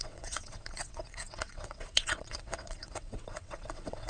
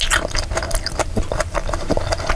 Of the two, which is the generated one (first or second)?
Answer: first